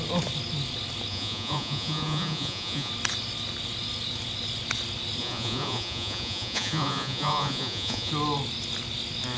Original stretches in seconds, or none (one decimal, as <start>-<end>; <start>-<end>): 0.0-1.1; 2.9-5.2; 8.1-9.4